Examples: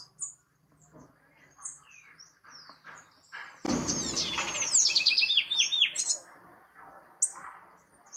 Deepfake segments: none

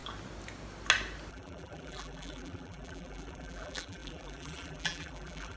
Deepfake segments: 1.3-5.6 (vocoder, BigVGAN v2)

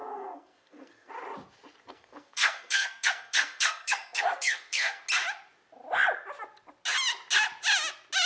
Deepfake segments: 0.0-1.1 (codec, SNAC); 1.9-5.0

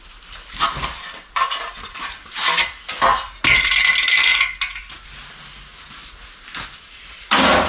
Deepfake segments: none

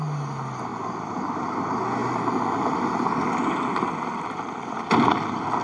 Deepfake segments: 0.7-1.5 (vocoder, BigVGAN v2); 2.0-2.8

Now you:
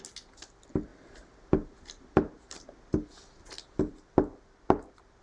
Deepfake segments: none

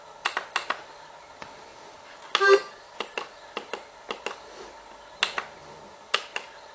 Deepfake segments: none